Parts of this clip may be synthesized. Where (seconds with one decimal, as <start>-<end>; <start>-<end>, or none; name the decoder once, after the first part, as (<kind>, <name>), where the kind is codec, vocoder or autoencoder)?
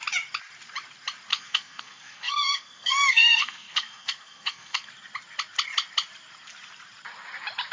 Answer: 1.3-4.9 (codec, SNAC)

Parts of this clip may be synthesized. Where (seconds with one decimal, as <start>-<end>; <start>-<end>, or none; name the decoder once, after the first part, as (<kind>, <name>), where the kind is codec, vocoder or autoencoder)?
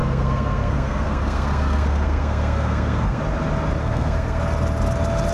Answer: 0.0-3.2 (codec, SNAC); 3.8-4.4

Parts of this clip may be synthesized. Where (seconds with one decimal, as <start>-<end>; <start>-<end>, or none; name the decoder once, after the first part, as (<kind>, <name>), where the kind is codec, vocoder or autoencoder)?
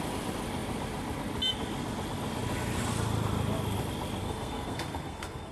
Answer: 4.2-5.5 (codec, SNAC)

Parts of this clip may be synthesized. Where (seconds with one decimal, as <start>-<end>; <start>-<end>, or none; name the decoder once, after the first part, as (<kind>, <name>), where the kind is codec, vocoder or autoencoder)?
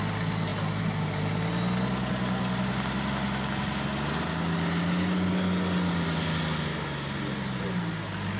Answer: none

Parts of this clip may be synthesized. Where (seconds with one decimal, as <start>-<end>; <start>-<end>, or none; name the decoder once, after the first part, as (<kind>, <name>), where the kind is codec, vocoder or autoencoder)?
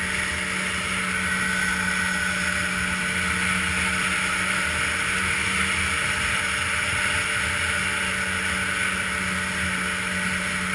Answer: none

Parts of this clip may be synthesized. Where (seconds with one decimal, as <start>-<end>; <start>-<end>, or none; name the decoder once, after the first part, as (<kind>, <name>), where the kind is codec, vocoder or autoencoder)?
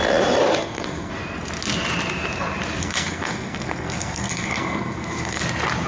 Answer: 0.6-1.1 (codec, SNAC); 2.8-5.4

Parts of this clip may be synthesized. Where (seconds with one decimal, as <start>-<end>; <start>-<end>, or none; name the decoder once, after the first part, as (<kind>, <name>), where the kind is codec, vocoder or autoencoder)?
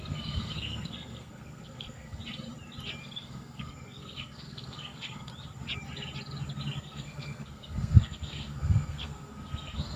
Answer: 0.0-2.2 (codec, SNAC); 3.0-5.3; 6.8-10.0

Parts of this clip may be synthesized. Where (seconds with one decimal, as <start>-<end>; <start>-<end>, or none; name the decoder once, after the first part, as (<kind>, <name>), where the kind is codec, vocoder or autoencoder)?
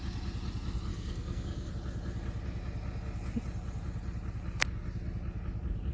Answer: 0.9-1.7 (codec, SNAC)